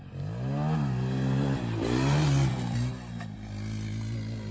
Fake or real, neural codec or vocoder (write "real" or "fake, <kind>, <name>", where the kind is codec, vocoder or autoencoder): real